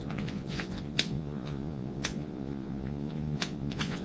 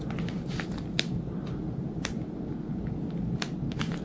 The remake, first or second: first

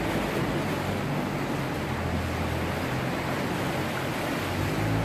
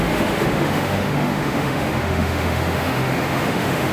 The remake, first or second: second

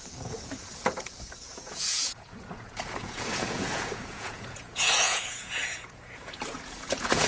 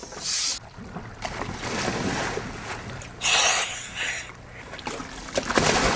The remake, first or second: first